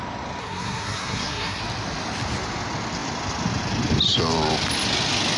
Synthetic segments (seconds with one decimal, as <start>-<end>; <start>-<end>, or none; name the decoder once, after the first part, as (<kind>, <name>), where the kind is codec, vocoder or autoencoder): 0.4-1.6 (codec, SNAC)